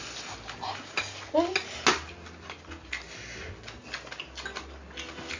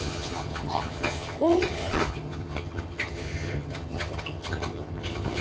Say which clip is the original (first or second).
first